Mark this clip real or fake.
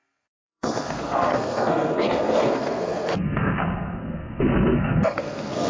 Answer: fake